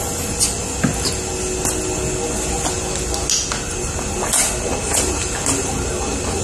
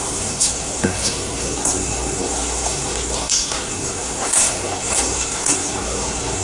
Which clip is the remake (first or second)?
second